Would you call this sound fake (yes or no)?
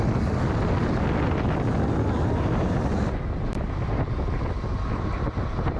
no